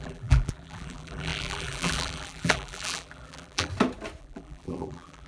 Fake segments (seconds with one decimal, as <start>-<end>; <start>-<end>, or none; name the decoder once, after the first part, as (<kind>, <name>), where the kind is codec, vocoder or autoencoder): 0.0-3.7 (vocoder, BigVGAN v2); 4.2-5.3